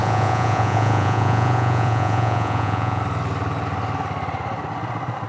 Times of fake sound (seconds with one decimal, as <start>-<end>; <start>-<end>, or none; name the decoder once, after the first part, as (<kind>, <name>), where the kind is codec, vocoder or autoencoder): 0.0-3.0 (vocoder, Vocos)